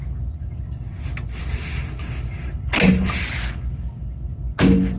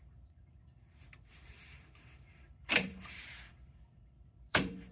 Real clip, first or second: first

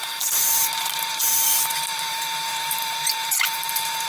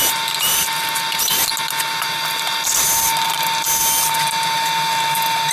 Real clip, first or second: second